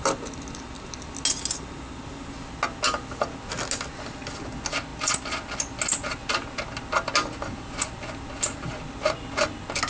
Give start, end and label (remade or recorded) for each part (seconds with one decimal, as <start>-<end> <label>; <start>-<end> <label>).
0.0-9.9 recorded